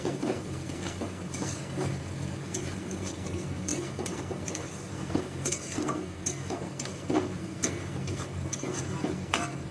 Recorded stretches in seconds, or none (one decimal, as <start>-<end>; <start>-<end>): none